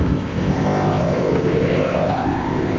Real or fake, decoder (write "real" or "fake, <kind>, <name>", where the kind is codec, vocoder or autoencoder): fake, codec, ZipCodec